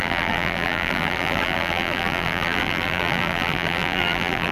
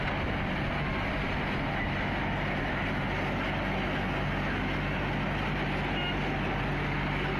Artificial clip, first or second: first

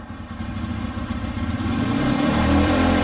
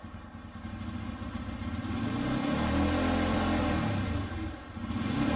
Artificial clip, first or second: first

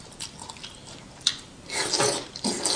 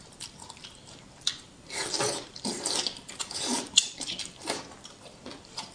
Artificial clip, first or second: second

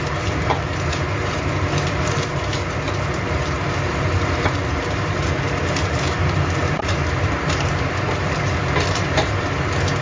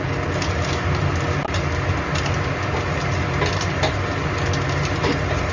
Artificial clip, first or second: first